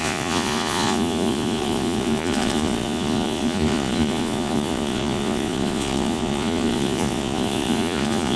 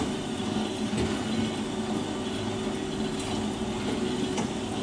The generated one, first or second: first